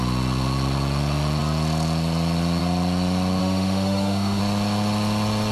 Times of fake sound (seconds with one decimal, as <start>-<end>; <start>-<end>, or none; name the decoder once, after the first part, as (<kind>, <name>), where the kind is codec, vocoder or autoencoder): 3.4-4.4 (autoencoder, DAC-VAE)